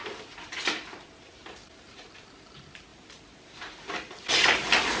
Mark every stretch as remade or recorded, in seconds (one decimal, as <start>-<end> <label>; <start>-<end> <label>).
0.0-2.9 recorded; 2.9-3.9 remade; 3.9-5.0 recorded